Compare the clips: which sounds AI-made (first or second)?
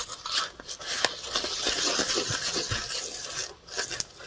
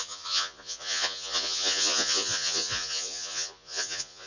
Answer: second